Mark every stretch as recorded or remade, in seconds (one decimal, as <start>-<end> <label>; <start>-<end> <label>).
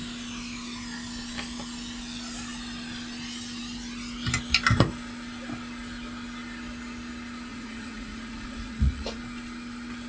0.0-7.5 recorded; 7.5-9.2 remade; 9.2-10.1 recorded